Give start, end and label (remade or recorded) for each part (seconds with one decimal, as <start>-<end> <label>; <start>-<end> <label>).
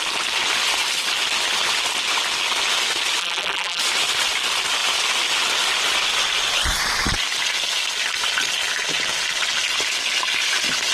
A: 0.0-3.2 recorded; 3.2-3.8 remade; 3.8-10.9 recorded